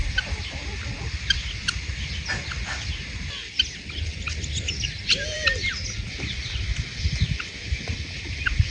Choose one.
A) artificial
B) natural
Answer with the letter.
B